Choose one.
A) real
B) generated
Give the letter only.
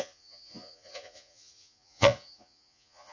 B